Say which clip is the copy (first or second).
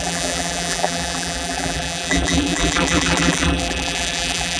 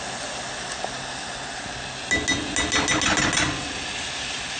first